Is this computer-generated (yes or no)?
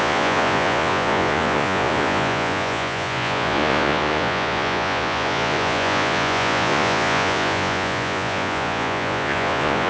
yes